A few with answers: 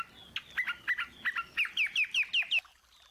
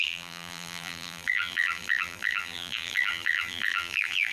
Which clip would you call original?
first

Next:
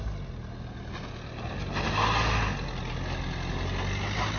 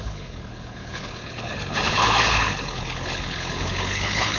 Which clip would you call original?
first